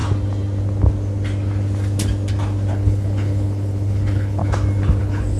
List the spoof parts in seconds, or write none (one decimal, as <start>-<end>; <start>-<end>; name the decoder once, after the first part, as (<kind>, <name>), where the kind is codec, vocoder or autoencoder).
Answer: 2.7-4.4 (codec, HILCodec); 5.0-5.4